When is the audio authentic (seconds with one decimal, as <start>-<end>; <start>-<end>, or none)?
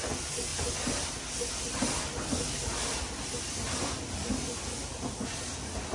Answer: 0.0-5.9